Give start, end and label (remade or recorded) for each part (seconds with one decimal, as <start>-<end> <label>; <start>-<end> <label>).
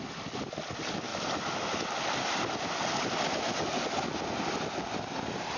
0.0-5.6 recorded